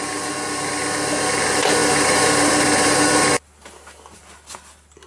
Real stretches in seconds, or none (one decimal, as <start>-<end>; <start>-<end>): 0.0-1.8; 2.6-5.1